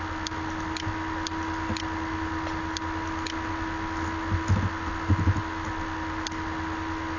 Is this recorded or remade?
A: recorded